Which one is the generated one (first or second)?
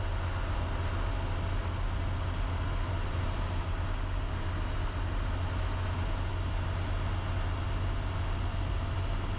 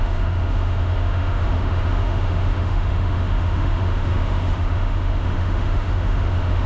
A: second